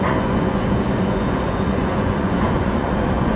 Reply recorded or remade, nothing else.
remade